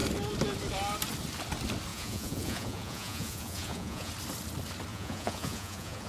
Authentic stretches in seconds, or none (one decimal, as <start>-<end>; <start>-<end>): 0.0-1.9; 4.1-4.9